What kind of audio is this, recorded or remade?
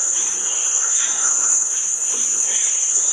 remade